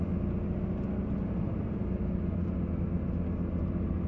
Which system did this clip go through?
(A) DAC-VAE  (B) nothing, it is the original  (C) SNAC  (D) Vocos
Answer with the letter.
B